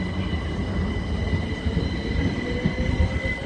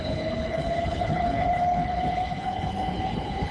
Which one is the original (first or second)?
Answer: first